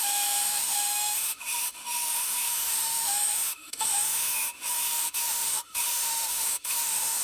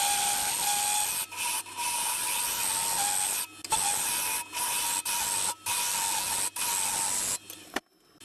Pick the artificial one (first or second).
first